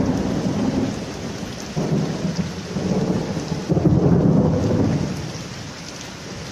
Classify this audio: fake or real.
real